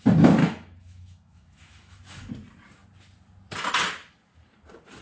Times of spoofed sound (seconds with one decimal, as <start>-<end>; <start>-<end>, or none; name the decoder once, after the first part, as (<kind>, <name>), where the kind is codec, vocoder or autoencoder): 0.4-2.3 (autoencoder, DAC-VAE)